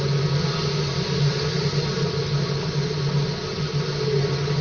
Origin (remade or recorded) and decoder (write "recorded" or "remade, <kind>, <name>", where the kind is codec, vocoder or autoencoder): recorded